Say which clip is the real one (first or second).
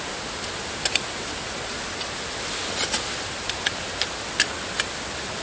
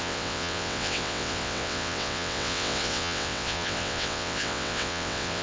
first